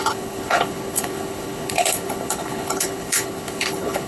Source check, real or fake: fake